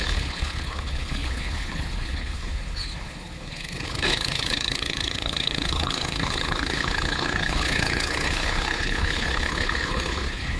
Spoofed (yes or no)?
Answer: yes